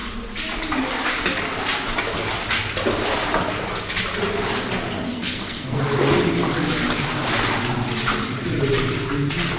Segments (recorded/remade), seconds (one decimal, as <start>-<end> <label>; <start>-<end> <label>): 0.0-5.1 recorded; 5.1-5.8 remade; 5.8-9.6 recorded